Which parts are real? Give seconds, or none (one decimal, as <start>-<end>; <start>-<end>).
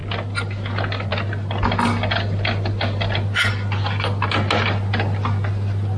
0.0-6.0